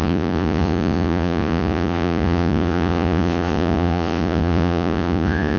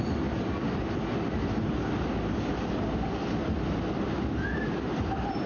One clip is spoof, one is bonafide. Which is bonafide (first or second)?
second